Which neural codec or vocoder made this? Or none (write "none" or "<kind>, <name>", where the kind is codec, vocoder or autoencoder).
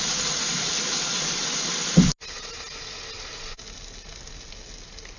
none